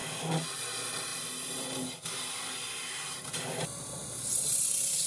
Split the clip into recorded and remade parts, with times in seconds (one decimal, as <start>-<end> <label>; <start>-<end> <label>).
0.0-5.1 recorded

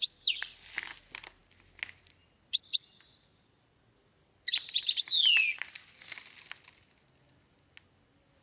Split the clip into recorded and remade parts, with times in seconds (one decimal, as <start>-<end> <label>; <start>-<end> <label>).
0.0-8.4 recorded

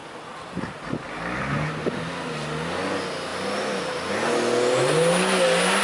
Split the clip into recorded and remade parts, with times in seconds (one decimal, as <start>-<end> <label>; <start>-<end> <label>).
0.0-5.8 recorded

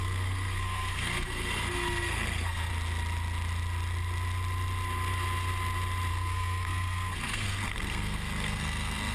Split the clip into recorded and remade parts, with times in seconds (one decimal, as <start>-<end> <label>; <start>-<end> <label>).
0.0-2.7 remade; 2.7-6.1 recorded; 6.1-9.1 remade

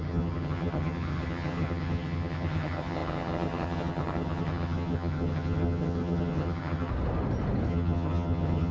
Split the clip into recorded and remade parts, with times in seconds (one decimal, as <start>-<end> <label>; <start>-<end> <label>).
0.0-6.9 remade; 6.9-7.7 recorded; 7.7-8.7 remade

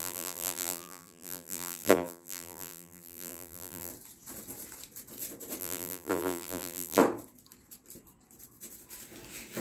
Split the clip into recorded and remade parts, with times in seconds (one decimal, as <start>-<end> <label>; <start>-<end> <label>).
0.0-3.9 remade; 3.9-5.6 recorded; 5.6-7.0 remade; 7.0-9.6 recorded

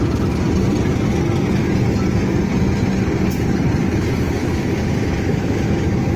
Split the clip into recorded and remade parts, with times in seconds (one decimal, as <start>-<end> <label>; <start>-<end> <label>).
0.0-4.4 recorded; 4.4-6.2 remade